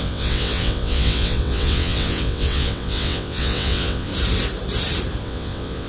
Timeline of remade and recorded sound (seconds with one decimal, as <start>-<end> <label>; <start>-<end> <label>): 0.0-4.1 remade; 4.1-5.2 recorded; 5.2-5.9 remade

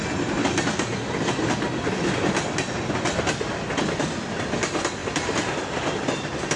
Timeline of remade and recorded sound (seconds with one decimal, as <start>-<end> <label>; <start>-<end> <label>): 0.0-6.6 recorded

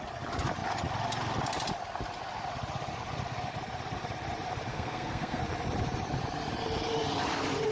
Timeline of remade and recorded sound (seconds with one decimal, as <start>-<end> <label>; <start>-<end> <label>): 0.0-4.7 recorded; 4.7-5.4 remade; 5.4-7.7 recorded

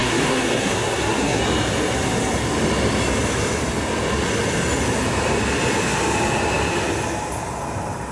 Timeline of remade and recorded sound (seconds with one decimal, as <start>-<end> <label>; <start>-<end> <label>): 0.0-1.4 remade; 1.4-8.1 recorded